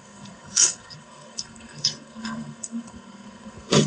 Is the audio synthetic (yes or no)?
yes